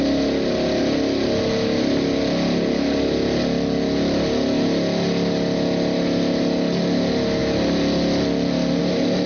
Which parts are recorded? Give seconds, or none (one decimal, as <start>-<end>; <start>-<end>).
0.0-9.3